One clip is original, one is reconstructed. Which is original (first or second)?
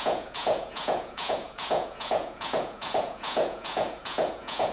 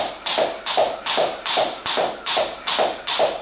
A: second